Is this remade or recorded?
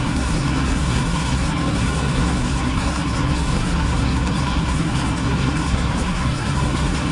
remade